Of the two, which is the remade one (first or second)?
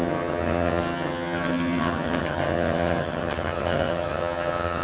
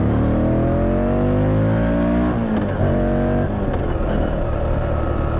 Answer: first